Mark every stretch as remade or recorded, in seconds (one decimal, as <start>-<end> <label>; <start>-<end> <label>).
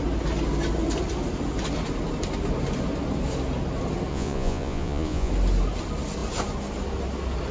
0.0-4.1 recorded; 4.1-5.3 remade; 5.3-7.5 recorded